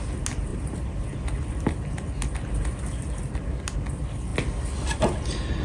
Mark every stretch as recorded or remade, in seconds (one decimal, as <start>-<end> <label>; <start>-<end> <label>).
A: 0.0-5.6 recorded